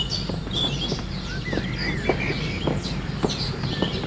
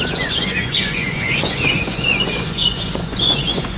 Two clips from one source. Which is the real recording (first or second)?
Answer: first